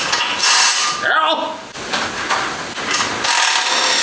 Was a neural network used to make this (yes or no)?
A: no